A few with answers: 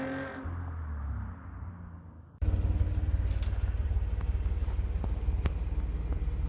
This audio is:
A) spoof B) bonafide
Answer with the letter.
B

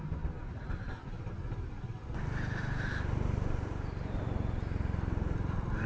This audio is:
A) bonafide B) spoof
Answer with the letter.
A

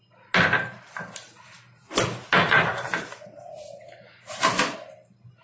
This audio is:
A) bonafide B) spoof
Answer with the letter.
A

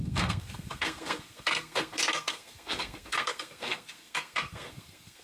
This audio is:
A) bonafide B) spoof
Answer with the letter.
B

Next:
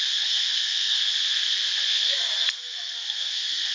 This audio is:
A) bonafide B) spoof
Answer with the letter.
B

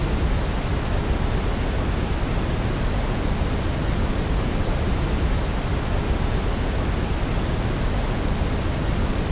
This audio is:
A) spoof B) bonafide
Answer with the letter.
B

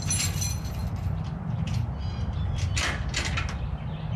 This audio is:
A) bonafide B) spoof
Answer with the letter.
A